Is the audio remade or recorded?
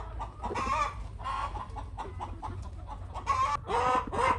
recorded